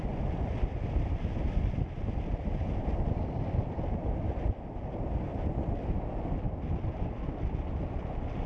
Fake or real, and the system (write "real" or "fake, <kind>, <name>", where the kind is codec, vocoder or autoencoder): real